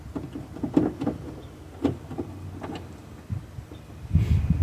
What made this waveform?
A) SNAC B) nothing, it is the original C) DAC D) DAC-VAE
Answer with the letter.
B